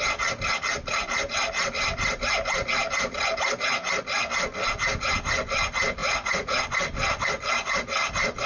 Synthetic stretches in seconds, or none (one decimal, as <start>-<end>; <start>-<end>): 6.0-6.6